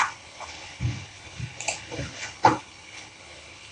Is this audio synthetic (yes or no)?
yes